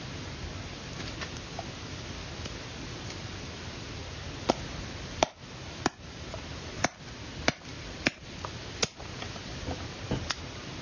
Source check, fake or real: real